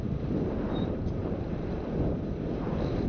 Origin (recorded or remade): remade